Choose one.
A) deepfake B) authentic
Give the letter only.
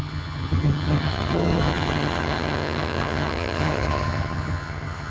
A